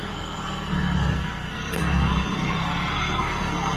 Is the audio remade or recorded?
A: remade